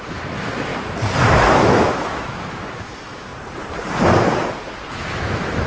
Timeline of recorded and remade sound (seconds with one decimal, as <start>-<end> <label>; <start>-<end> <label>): 0.0-0.7 remade; 0.7-1.3 recorded; 1.3-3.3 remade; 3.3-4.9 recorded; 4.9-5.7 remade